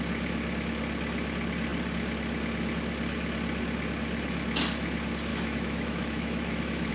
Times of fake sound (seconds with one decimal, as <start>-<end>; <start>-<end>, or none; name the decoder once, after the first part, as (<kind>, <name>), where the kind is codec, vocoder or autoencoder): 5.3-6.9 (autoencoder, DAC-VAE)